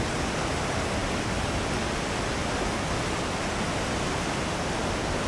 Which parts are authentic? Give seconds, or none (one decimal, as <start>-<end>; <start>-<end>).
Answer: 0.0-5.3